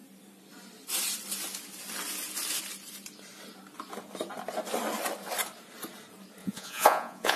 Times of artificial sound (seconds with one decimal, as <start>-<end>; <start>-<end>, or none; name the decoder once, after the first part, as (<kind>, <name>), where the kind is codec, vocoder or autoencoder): 6.4-7.4 (vocoder, Vocos)